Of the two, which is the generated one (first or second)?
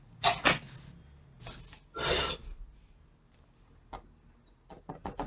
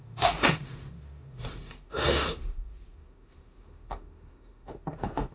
second